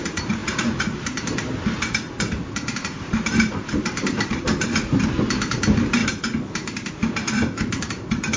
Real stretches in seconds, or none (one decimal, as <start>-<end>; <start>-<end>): 6.0-6.9